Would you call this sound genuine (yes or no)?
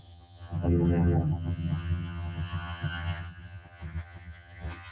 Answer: no